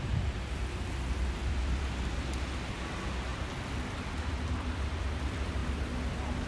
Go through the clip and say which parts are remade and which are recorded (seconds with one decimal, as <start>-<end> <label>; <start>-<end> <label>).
0.0-1.4 recorded; 1.4-2.1 remade; 2.1-6.5 recorded